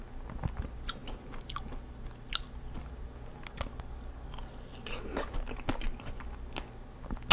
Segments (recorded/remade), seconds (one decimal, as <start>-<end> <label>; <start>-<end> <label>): 0.0-7.3 recorded